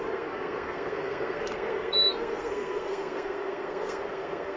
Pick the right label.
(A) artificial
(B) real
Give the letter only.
A